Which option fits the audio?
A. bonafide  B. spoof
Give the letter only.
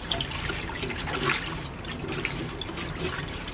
A